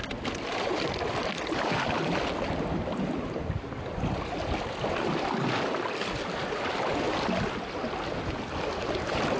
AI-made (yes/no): no